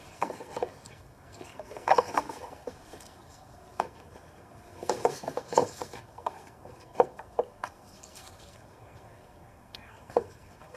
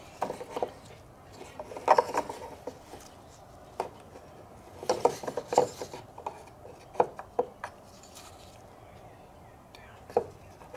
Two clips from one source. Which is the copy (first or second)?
first